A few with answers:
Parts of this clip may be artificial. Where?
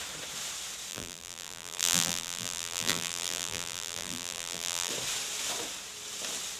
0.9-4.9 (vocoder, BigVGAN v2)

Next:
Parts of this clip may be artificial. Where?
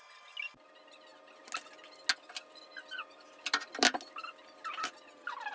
none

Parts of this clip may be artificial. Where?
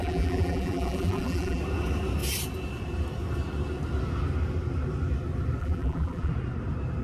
0.0-1.6 (vocoder, BigVGAN v2); 5.6-6.3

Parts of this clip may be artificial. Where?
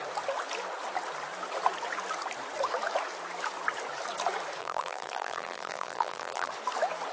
4.6-6.5 (vocoder, BigVGAN v2)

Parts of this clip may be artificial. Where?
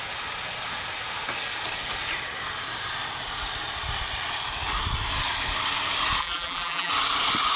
6.2-6.9 (vocoder, BigVGAN v2)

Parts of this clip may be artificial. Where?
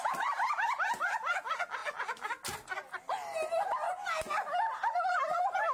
none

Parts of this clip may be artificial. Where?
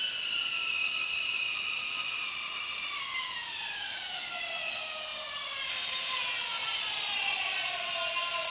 6.6-8.0 (vocoder, BigVGAN v2)